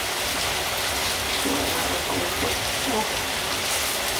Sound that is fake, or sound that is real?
real